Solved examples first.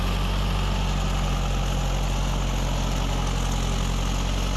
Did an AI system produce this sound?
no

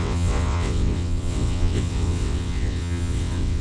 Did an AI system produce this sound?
yes